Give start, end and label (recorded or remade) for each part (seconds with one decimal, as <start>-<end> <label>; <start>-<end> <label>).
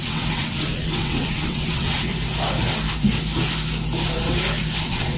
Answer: 0.0-2.1 remade; 2.1-4.8 recorded; 4.8-5.2 remade